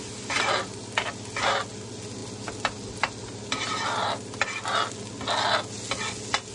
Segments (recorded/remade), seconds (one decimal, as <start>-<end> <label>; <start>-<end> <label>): 0.0-6.5 recorded